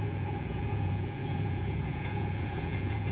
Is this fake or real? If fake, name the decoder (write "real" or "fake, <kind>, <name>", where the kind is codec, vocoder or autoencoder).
fake, vocoder, Vocos